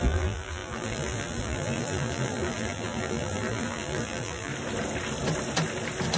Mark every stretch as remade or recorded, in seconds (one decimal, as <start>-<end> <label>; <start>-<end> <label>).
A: 0.0-4.5 remade; 4.5-6.2 recorded